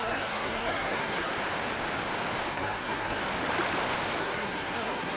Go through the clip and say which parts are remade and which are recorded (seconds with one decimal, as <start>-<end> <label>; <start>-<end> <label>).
0.0-1.3 remade; 1.3-2.5 recorded; 2.5-3.2 remade; 3.2-4.2 recorded; 4.2-5.2 remade